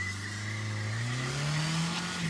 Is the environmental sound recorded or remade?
recorded